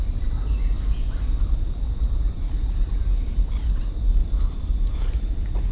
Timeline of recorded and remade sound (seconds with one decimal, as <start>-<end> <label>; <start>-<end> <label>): 0.0-4.2 recorded; 4.2-5.3 remade; 5.3-5.7 recorded

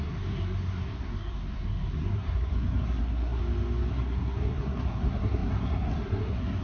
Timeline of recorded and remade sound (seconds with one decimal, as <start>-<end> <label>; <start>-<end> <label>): 0.0-3.4 remade; 3.4-3.9 recorded; 3.9-6.6 remade

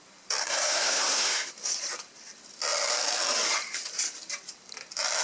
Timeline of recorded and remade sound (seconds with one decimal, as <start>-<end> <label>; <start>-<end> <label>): 0.0-0.4 recorded; 0.4-1.5 remade; 1.5-5.2 recorded

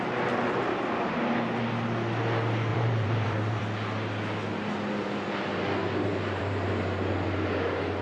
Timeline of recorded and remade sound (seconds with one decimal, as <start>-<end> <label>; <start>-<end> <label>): 0.0-2.7 recorded; 2.7-3.6 remade; 3.6-5.8 recorded; 5.8-6.7 remade; 6.7-8.0 recorded

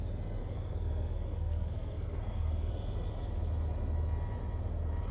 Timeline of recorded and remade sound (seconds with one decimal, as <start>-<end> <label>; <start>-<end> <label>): 0.0-0.4 recorded; 0.4-2.7 remade; 2.7-5.1 recorded